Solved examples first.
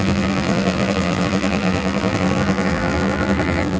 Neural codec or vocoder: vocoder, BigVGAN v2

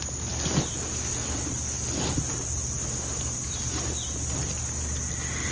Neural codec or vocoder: none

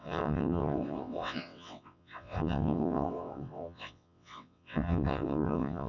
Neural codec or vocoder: vocoder, WaveNeXt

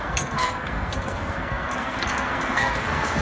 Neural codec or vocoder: codec, SNAC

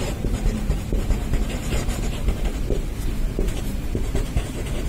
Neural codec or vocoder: vocoder, BigVGAN v2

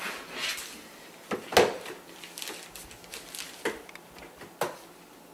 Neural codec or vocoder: none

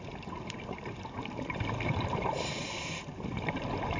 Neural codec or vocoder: vocoder, BigVGAN v2